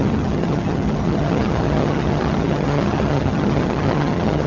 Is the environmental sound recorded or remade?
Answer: remade